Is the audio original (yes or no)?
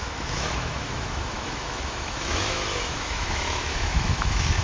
no